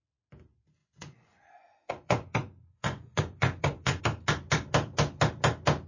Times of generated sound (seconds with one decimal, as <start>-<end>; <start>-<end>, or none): 0.8-4.0